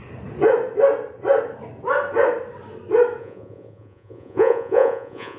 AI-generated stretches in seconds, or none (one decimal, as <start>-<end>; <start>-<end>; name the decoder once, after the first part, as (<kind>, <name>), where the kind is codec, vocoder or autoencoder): 3.2-5.4 (vocoder, Vocos)